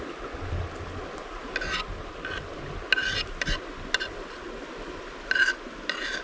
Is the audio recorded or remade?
recorded